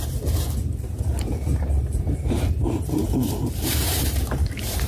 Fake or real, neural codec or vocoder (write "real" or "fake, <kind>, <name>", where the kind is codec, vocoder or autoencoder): fake, vocoder, BigVGAN v2